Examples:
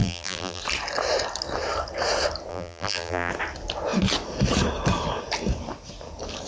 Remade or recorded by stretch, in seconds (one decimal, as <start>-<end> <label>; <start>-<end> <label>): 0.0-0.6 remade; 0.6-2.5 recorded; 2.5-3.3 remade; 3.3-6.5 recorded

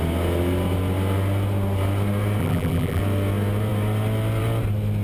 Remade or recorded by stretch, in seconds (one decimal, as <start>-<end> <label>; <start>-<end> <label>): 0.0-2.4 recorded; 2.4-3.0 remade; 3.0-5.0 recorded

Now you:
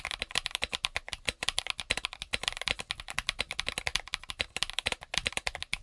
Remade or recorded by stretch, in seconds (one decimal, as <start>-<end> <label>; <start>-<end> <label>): 0.0-5.8 recorded

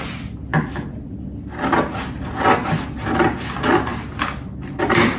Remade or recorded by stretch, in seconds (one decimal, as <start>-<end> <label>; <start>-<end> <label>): 0.0-5.2 recorded

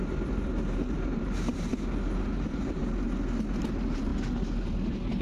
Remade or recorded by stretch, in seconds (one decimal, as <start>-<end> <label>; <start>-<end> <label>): 0.0-1.7 remade; 1.7-2.2 recorded; 2.2-2.8 remade; 2.8-3.6 recorded; 3.6-4.1 remade; 4.1-5.2 recorded